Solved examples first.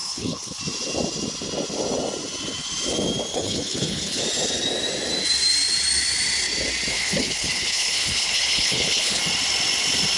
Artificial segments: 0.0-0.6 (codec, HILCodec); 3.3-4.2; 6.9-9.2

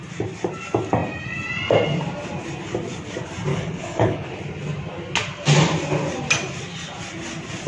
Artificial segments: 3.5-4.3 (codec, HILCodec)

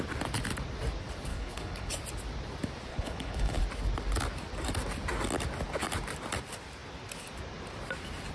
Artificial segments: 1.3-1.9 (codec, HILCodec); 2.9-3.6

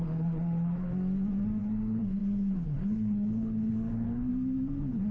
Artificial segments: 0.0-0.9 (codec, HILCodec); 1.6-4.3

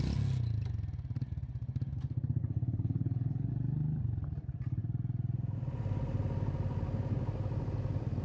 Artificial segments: 2.4-3.5 (codec, HILCodec)

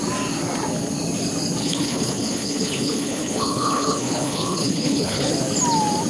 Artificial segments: 1.6-5.3 (codec, HILCodec)